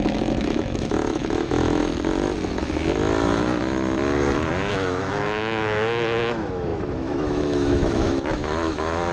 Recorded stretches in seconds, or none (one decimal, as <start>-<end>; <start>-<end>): 1.8-4.7